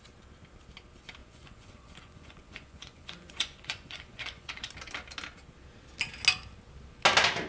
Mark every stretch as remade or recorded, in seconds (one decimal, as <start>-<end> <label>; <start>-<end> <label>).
0.0-1.2 recorded; 1.2-4.7 remade; 4.7-7.5 recorded